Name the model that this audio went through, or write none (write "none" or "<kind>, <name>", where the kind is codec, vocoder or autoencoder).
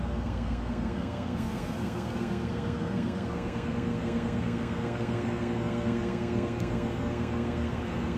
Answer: codec, SNAC